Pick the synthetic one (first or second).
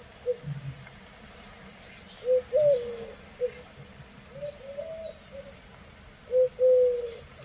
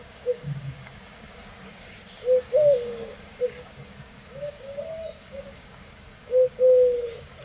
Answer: second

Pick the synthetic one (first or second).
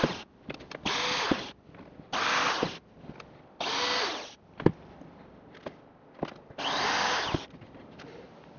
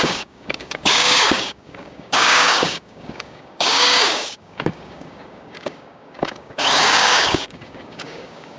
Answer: second